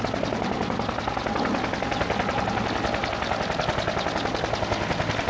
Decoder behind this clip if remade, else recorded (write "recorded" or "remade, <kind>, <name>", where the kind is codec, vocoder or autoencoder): recorded